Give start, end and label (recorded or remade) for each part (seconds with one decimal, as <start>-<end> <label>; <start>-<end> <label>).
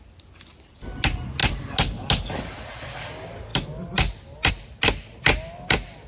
0.0-6.1 recorded